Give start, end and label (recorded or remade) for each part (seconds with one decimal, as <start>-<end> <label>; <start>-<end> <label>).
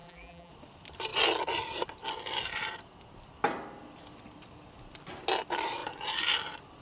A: 0.0-0.5 remade; 0.5-6.8 recorded